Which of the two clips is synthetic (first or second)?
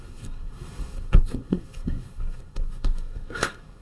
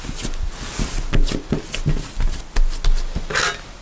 first